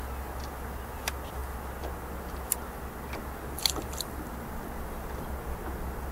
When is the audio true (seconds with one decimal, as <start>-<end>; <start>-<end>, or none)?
0.0-6.1